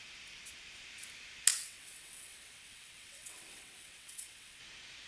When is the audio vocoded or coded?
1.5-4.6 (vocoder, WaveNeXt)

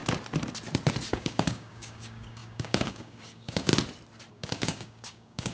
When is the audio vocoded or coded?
1.1-3.7 (codec, DAC); 4.3-5.5

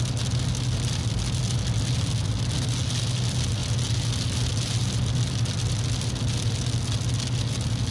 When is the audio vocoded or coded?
none